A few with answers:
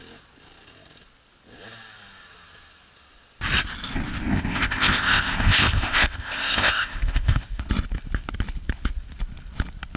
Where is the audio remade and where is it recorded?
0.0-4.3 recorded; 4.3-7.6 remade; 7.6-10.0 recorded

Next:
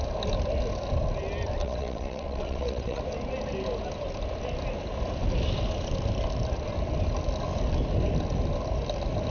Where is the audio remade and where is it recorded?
0.0-1.6 recorded; 1.6-3.0 remade; 3.0-9.3 recorded

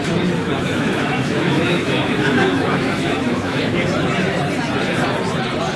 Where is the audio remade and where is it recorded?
0.0-0.4 recorded; 0.4-3.9 remade; 3.9-5.8 recorded